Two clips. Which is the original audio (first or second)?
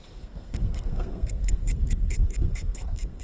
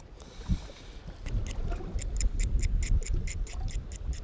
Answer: second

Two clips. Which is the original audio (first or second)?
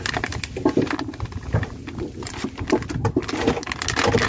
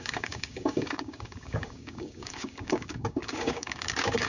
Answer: first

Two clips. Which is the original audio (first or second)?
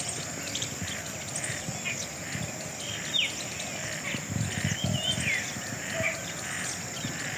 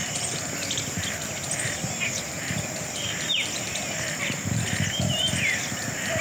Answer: first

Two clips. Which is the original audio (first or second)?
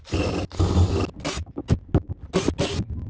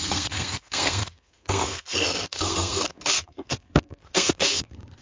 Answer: first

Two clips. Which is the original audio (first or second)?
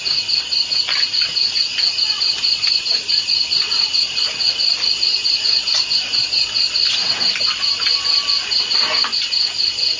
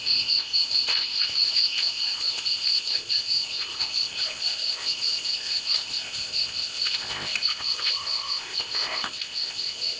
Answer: first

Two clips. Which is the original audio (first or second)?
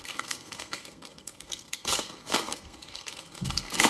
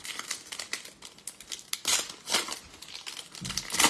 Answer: second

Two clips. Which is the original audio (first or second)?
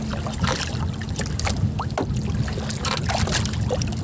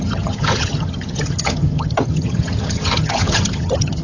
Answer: first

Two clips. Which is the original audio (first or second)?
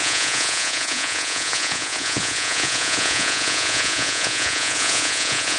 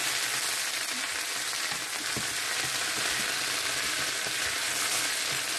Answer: second